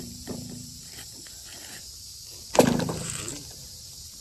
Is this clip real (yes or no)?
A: no